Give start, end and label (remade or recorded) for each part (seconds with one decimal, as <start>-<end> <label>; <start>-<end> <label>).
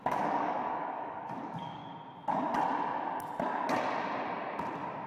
0.0-1.9 remade; 1.9-5.1 recorded